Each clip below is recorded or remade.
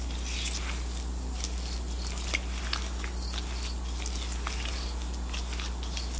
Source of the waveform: recorded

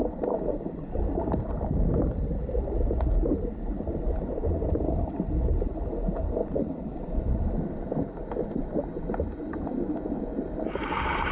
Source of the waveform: recorded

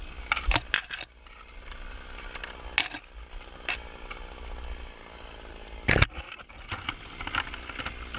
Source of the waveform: recorded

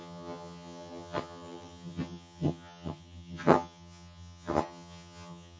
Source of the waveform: remade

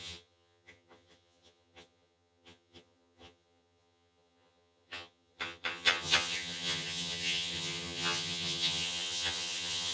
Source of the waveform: remade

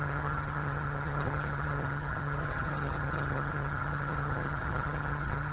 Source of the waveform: remade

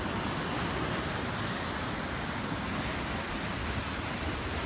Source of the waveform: recorded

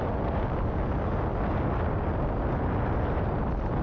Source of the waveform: recorded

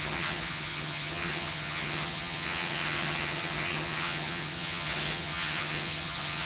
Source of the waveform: remade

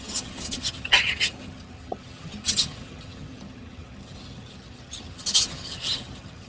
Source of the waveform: remade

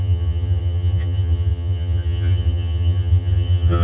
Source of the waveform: remade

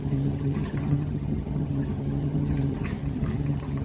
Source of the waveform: remade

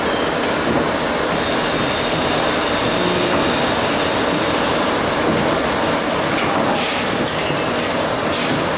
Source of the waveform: recorded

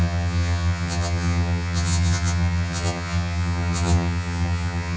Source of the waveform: remade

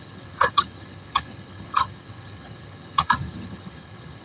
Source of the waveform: remade